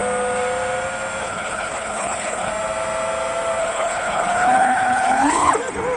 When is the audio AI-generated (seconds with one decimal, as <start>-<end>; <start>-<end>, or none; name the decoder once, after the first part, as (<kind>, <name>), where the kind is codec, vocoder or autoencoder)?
1.2-2.5 (codec, HILCodec); 3.6-5.5